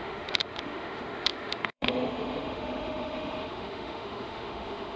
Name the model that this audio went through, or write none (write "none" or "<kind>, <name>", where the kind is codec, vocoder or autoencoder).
autoencoder, DAC-VAE